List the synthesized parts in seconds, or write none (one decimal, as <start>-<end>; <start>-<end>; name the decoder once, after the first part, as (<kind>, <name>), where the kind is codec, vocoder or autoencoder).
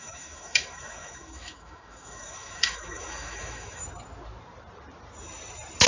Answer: 0.0-3.8 (autoencoder, DAC-VAE)